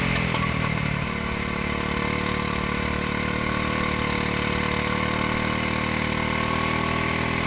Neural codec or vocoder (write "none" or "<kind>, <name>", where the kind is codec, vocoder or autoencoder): none